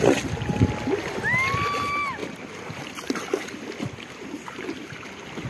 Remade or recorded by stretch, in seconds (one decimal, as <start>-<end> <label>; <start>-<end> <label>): 0.0-5.5 recorded